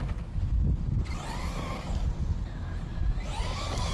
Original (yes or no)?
yes